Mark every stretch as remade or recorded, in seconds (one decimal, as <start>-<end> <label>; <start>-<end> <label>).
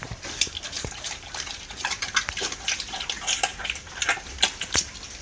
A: 0.0-5.2 recorded